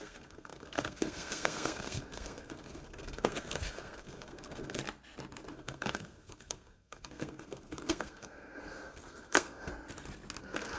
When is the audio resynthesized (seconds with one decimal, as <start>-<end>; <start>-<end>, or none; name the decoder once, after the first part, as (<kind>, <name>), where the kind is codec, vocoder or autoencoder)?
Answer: 0.0-4.8 (codec, SNAC); 5.5-9.7; 10.4-10.8